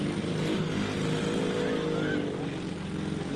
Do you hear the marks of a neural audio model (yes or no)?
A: no